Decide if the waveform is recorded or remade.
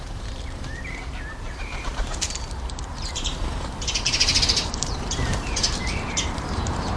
remade